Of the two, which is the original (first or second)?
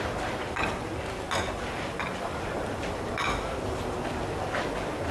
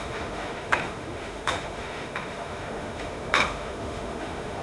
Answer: first